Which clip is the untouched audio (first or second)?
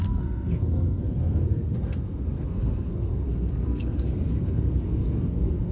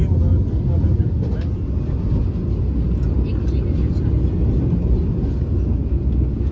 second